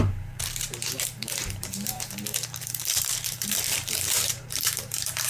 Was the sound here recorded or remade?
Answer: remade